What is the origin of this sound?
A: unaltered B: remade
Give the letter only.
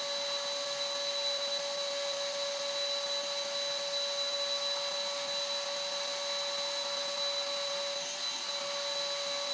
A